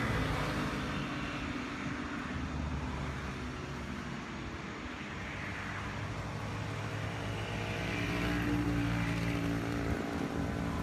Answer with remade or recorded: recorded